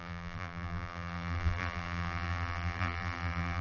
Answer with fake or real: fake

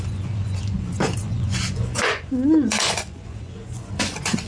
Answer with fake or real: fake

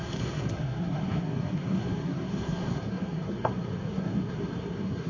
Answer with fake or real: fake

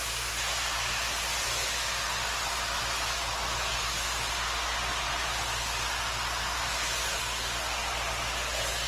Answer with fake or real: real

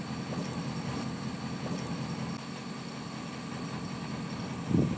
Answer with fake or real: real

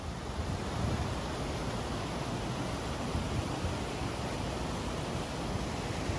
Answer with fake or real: real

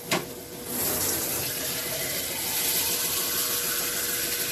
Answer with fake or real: real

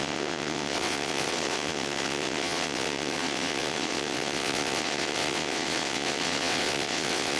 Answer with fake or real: fake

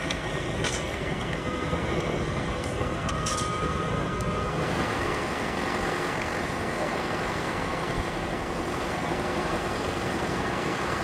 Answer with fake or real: fake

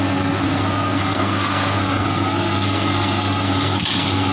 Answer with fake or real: fake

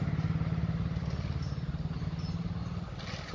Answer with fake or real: real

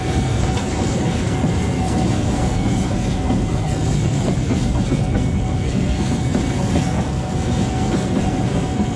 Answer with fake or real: fake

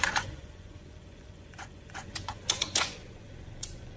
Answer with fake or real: fake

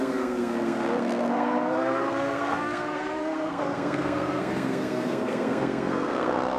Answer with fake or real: fake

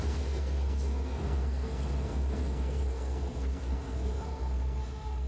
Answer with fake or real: fake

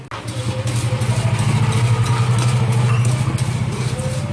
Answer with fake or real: real